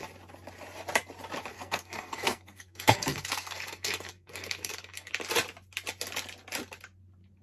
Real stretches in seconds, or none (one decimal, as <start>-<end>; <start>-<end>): 0.0-1.5; 5.1-7.4